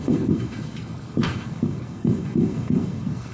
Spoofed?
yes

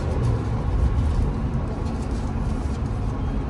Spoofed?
no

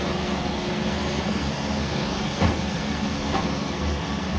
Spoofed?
yes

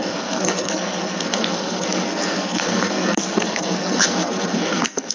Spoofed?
yes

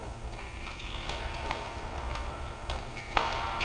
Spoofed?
yes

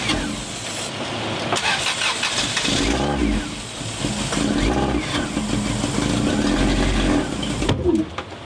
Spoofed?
no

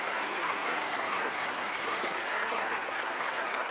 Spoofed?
yes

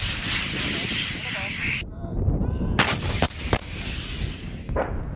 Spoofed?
no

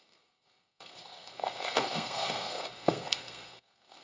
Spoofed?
yes